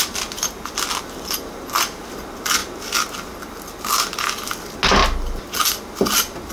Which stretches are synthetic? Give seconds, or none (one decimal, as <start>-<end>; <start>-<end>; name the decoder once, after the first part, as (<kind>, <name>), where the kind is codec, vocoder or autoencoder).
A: none